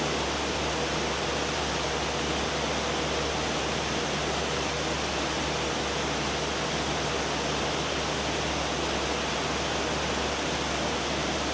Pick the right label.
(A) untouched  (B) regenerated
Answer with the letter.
A